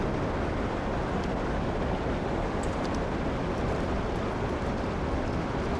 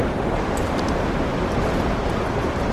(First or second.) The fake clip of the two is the second